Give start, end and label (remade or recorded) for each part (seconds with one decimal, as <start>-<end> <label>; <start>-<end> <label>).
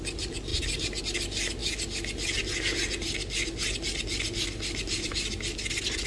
0.0-6.1 recorded